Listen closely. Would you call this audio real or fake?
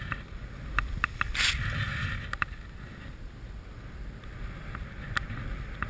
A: real